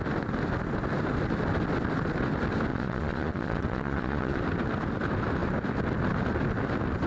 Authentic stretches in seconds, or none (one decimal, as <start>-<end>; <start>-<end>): 0.0-2.7; 4.4-7.1